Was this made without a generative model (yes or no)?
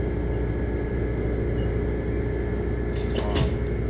yes